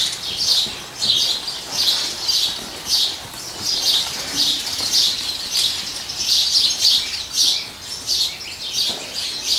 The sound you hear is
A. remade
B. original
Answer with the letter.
B